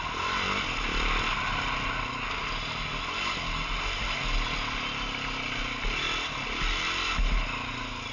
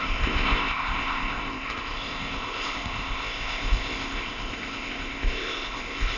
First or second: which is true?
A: first